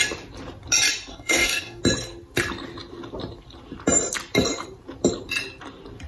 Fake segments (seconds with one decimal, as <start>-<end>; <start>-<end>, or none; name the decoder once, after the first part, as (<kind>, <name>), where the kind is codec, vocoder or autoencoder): 1.1-1.8 (codec, DAC)

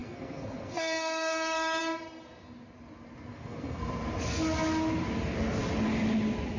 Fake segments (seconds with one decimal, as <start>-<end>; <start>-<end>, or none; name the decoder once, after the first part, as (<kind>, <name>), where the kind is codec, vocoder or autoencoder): 0.0-1.8 (codec, SNAC); 3.3-3.9

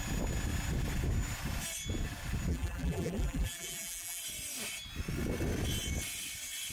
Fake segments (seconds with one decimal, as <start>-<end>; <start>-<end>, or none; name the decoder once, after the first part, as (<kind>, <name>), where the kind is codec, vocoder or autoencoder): 2.5-4.2 (vocoder, BigVGAN v2)

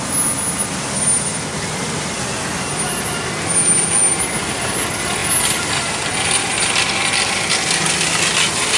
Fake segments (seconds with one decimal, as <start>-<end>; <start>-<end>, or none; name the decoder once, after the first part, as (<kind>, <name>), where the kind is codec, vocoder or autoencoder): none

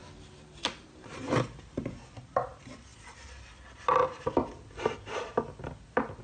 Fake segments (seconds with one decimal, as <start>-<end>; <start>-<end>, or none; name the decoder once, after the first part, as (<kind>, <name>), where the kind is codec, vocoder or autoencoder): 0.0-1.9 (vocoder, BigVGAN v2)

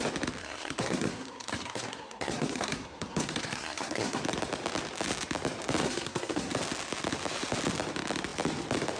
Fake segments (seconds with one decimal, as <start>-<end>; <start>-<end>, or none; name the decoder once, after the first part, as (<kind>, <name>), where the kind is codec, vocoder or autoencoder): 0.4-4.2 (codec, SNAC); 5.8-6.5

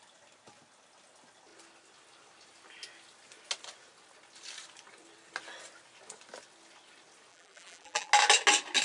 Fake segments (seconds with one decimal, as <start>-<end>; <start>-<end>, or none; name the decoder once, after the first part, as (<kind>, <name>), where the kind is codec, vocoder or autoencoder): 7.3-8.1 (vocoder, BigVGAN v2)